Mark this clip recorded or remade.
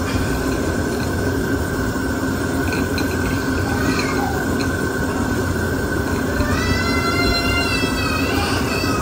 recorded